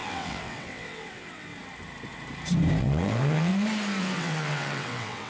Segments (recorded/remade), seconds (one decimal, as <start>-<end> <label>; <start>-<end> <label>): 0.0-1.5 remade; 1.5-2.8 recorded; 2.8-3.5 remade; 3.5-4.0 recorded; 4.0-5.3 remade